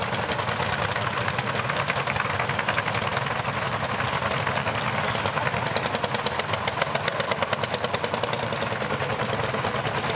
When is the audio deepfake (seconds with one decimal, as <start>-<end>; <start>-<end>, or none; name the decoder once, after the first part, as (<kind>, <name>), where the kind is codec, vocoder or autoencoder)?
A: none